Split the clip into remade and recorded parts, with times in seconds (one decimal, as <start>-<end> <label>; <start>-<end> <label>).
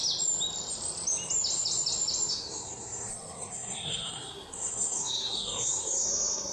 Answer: 0.0-2.3 recorded; 2.3-6.5 remade